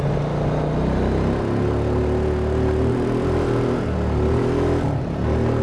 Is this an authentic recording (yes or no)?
yes